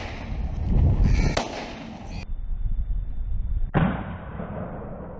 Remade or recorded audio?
recorded